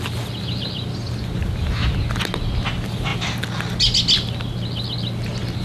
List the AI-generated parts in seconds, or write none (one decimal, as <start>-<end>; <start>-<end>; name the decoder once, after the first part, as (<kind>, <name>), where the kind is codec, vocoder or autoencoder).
none